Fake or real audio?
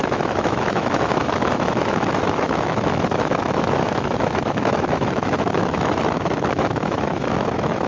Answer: fake